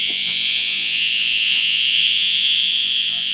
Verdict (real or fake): fake